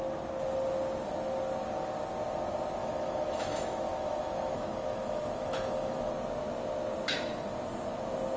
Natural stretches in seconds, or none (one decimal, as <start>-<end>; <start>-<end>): 0.0-2.8; 6.1-8.4